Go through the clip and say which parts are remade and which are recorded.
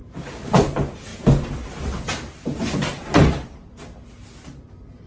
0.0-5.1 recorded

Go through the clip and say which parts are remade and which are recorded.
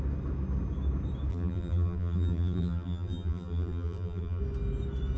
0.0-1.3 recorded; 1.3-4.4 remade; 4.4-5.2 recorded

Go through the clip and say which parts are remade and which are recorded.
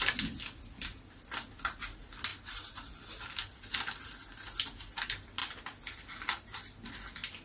0.0-2.3 recorded; 2.3-4.0 remade; 4.0-7.4 recorded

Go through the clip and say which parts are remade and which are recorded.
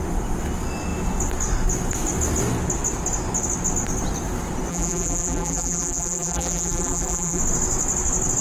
0.0-4.7 recorded; 4.7-7.4 remade; 7.4-8.4 recorded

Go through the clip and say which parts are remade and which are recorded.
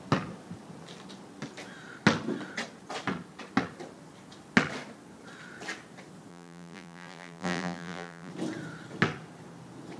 0.0-6.3 recorded; 6.3-8.3 remade; 8.3-10.0 recorded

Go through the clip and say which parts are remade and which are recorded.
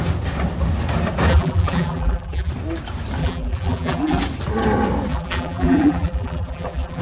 0.0-1.3 recorded; 1.3-2.5 remade; 2.5-3.2 recorded; 3.2-4.2 remade; 4.2-5.1 recorded; 5.1-7.0 remade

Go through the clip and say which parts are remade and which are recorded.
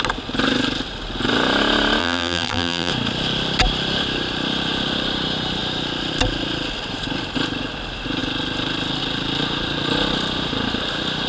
0.0-2.0 recorded; 2.0-2.9 remade; 2.9-11.3 recorded